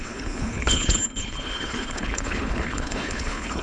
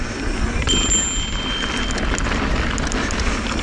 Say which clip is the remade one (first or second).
first